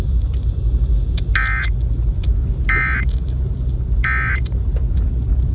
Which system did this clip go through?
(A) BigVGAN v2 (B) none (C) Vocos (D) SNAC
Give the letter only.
B